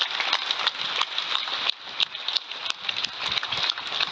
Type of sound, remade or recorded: recorded